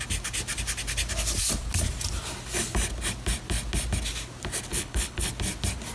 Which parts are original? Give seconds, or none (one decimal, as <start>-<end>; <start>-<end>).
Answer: 0.0-4.7; 5.3-5.9